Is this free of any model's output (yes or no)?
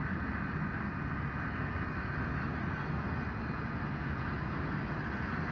yes